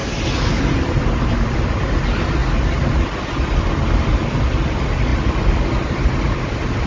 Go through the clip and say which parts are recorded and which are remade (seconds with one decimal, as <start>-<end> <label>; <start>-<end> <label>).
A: 0.0-6.9 recorded